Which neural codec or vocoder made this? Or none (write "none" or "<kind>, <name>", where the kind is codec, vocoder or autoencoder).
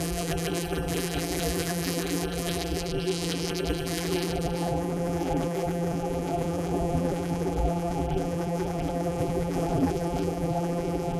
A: vocoder, BigVGAN v2